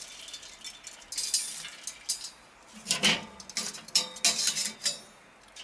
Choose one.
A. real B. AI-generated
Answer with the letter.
A